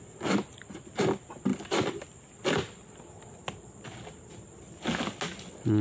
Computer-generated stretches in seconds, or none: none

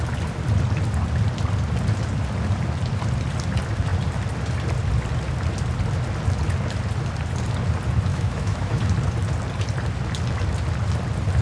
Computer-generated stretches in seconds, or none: 8.1-8.8 (autoencoder, DAC-VAE)

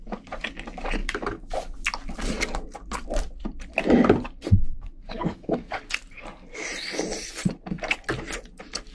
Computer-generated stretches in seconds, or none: 1.0-1.5 (codec, DAC); 4.7-5.8

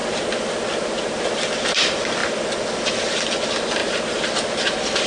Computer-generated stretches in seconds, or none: 1.3-3.8 (vocoder, BigVGAN v2)